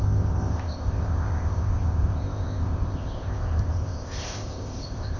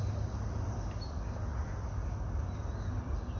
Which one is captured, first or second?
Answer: second